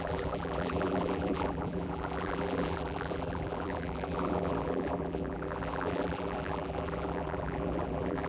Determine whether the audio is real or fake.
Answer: fake